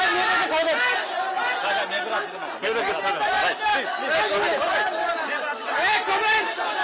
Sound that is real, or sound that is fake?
real